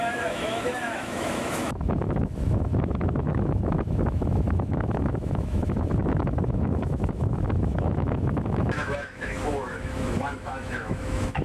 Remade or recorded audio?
remade